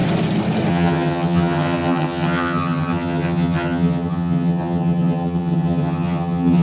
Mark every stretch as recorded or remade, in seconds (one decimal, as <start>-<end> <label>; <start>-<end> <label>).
0.0-0.7 recorded; 0.7-6.6 remade